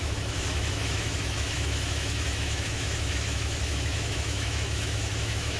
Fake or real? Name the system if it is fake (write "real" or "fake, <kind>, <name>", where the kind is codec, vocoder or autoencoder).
fake, autoencoder, DAC-VAE